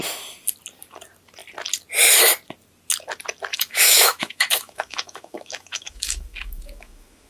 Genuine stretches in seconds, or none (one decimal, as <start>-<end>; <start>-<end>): 0.0-3.5